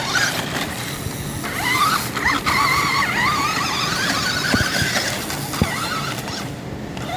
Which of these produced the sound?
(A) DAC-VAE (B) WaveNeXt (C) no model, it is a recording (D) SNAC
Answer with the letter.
C